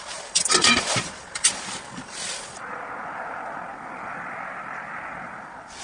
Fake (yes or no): yes